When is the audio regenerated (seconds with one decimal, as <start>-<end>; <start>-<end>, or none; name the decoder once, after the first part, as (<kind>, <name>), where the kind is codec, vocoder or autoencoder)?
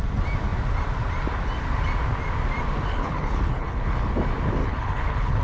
2.9-4.1 (codec, HILCodec); 4.6-5.4